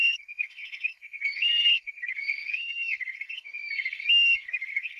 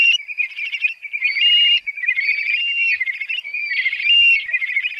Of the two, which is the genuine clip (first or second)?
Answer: second